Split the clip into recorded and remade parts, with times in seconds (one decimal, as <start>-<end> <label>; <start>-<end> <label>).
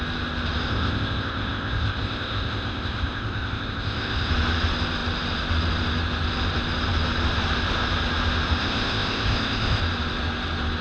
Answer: 0.0-0.7 recorded; 0.7-4.3 remade; 4.3-8.6 recorded; 8.6-9.8 remade; 9.8-10.8 recorded